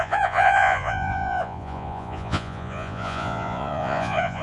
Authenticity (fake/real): fake